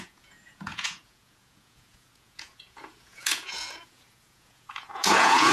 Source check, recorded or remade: remade